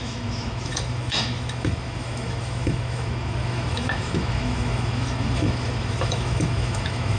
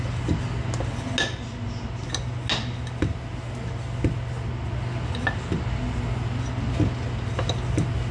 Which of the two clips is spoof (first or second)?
first